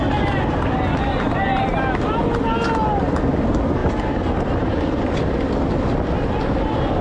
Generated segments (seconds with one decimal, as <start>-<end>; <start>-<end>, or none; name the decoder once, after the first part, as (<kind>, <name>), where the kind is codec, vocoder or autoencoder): none